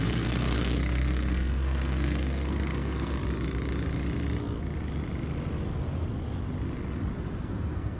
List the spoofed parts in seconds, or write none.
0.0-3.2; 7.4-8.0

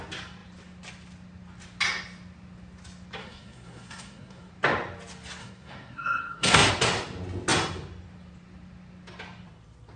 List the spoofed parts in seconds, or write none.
3.2-4.5; 5.4-6.7

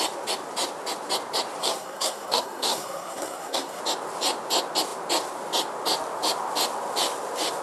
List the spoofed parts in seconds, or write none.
1.6-3.8